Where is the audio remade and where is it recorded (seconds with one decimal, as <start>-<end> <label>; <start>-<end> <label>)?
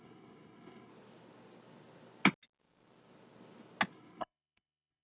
0.0-0.9 remade; 0.9-3.9 recorded; 3.9-5.0 remade